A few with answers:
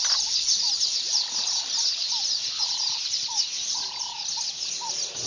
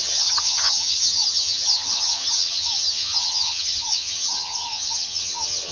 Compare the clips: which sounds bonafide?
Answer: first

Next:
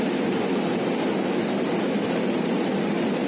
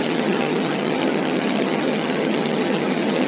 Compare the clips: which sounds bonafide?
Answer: first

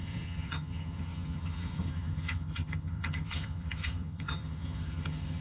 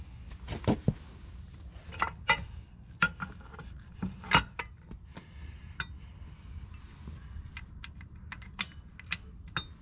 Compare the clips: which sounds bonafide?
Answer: second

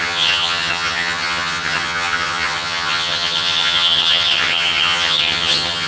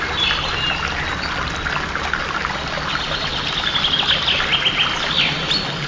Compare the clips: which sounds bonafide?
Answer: second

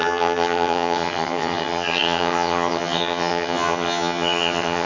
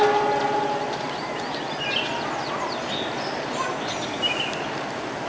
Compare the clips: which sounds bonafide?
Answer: second